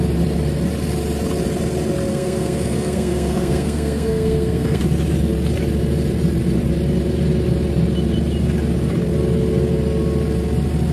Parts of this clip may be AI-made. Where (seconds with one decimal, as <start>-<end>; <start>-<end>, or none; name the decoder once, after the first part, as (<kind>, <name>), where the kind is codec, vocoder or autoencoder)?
2.1-4.8 (codec, SNAC)